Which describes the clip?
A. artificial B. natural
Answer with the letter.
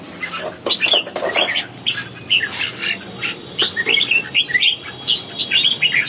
B